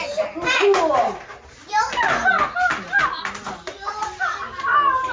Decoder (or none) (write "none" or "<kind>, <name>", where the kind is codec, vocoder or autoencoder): none